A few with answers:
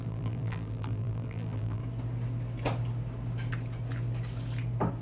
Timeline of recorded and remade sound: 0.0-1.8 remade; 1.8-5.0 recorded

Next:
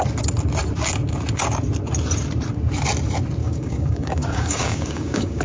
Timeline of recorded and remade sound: 0.0-3.4 recorded; 3.4-5.4 remade